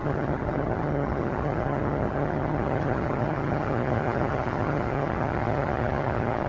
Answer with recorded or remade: remade